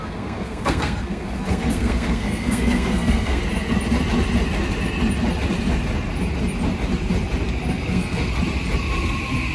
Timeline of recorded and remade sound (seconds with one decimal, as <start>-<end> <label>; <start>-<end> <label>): 0.0-3.4 remade; 3.4-7.8 recorded; 7.8-8.3 remade; 8.3-9.5 recorded